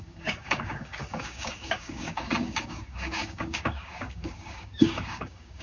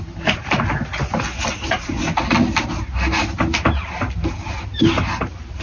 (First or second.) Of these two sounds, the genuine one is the second